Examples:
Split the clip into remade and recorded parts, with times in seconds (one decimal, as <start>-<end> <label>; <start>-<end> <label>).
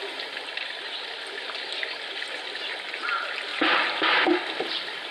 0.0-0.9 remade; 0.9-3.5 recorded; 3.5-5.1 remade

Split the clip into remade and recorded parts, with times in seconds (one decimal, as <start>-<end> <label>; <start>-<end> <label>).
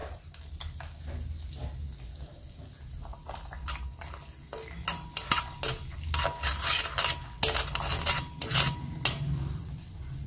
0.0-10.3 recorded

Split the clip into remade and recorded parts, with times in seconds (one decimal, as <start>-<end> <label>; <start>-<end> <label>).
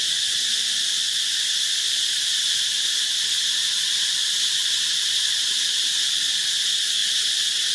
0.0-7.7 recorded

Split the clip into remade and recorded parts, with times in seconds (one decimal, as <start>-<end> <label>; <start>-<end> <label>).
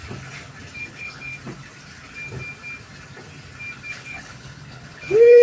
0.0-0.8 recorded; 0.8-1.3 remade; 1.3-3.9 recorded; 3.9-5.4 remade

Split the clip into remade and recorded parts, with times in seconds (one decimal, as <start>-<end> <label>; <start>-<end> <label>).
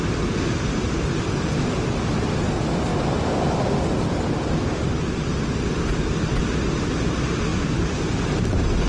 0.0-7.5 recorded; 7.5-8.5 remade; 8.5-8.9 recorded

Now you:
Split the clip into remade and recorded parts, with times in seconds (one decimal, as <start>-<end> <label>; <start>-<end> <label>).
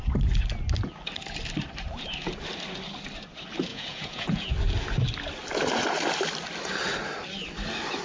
0.0-3.7 recorded; 3.7-4.5 remade; 4.5-8.0 recorded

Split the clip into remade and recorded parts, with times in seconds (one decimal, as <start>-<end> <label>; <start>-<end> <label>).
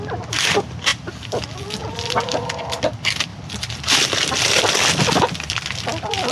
0.0-0.9 recorded; 0.9-1.4 remade; 1.4-1.8 recorded; 1.8-2.6 remade; 2.6-3.3 recorded; 3.3-5.0 remade; 5.0-6.3 recorded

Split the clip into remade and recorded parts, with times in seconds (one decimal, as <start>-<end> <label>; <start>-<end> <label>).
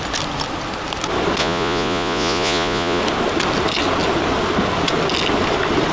0.0-1.4 recorded; 1.4-3.0 remade; 3.0-5.9 recorded